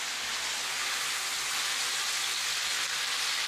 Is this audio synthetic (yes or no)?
no